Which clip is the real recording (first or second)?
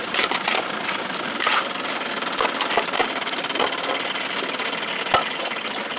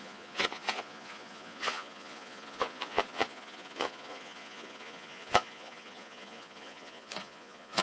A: first